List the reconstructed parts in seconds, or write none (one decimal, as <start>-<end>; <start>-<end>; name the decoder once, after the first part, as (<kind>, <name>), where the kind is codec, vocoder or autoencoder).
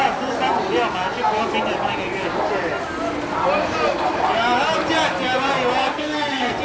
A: 5.8-6.6 (codec, SNAC)